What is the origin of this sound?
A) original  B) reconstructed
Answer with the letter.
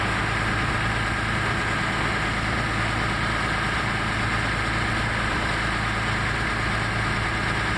A